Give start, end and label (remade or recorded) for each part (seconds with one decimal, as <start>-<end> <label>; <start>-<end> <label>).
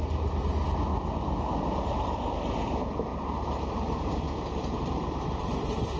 0.0-6.0 recorded